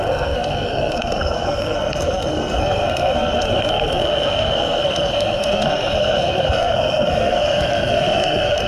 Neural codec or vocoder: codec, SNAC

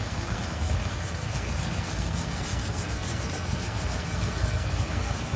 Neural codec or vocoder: codec, SNAC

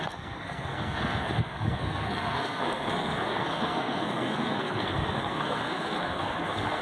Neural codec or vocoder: codec, SNAC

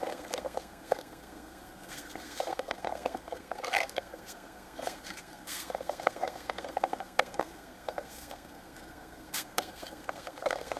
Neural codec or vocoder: codec, SNAC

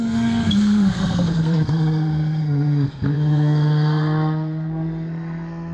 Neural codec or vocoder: codec, SNAC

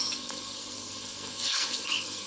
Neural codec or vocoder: codec, SNAC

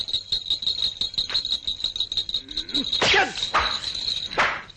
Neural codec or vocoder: none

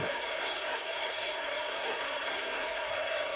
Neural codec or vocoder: codec, SNAC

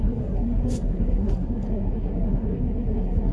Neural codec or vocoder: codec, SNAC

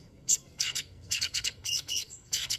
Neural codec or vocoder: codec, SNAC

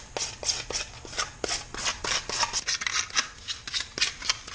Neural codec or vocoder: none